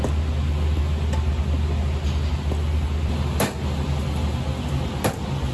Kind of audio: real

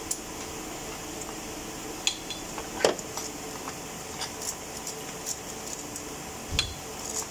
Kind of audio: real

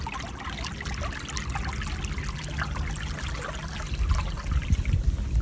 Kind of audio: real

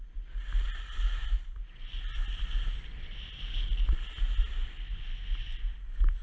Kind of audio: real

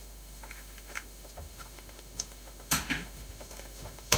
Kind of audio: fake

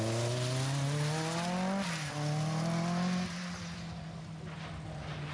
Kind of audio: real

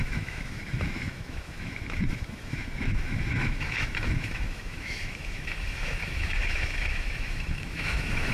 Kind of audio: fake